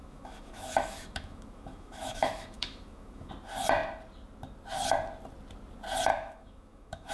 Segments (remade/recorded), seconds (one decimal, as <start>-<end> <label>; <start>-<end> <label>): 0.0-3.3 remade; 3.3-6.1 recorded; 6.1-7.1 remade